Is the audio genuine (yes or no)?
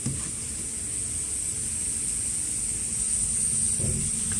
yes